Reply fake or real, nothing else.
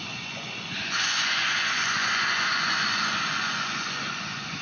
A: fake